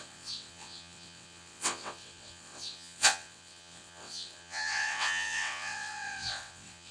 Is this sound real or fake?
fake